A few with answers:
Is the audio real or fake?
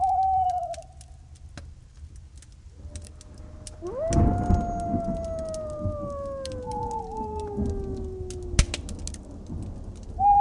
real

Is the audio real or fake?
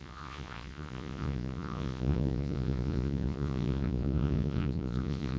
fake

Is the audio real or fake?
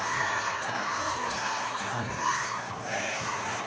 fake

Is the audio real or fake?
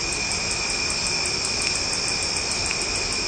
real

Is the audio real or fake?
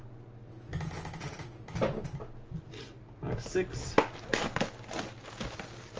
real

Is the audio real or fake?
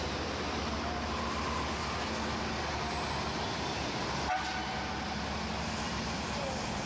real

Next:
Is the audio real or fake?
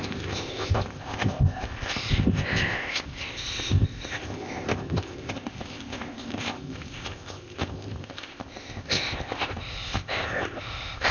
fake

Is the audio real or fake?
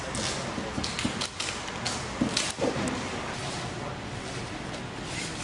real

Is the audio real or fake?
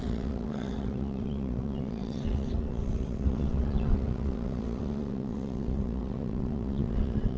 fake